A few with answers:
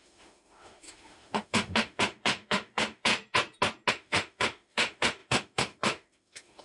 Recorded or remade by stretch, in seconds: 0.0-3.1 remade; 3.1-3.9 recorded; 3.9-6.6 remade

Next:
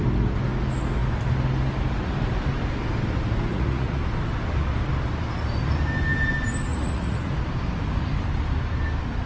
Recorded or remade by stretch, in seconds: 0.0-3.5 recorded; 3.5-4.0 remade; 4.0-6.7 recorded; 6.7-7.3 remade; 7.3-9.3 recorded